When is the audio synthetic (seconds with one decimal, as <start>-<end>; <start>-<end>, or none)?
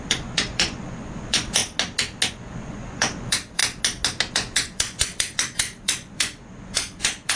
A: 0.0-1.6; 2.3-3.6; 4.3-7.4